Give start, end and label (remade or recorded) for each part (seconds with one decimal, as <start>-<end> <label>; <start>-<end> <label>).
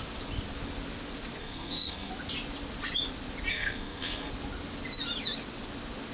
0.0-1.4 recorded; 1.4-2.1 remade; 2.1-3.5 recorded; 3.5-4.3 remade; 4.3-6.1 recorded